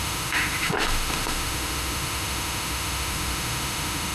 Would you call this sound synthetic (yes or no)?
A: yes